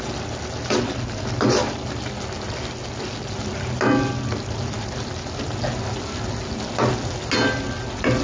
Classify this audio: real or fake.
real